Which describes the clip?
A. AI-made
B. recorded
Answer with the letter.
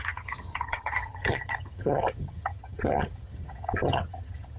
A